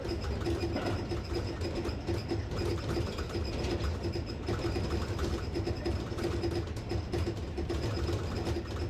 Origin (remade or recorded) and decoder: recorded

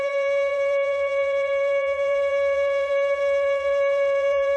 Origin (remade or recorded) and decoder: remade, vocoder, BigVGAN v2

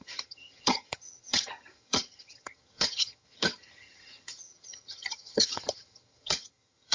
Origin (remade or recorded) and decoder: remade, vocoder, HiFi-GAN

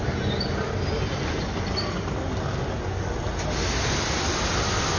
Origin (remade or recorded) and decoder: recorded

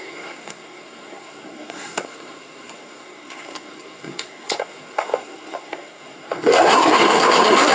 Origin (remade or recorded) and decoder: remade, codec, SNAC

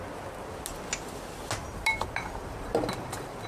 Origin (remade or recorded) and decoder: recorded